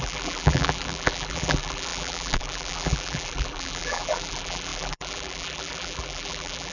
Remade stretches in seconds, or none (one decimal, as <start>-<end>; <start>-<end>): 0.0-6.7